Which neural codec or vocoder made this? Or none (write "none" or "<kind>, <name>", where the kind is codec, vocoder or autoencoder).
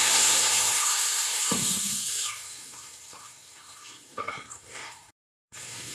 codec, SNAC